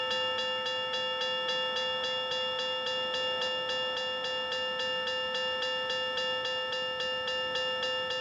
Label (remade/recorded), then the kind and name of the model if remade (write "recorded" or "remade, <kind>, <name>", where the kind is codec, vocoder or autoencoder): recorded